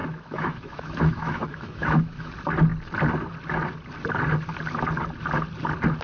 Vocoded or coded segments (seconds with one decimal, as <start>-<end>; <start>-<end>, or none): 0.0-2.3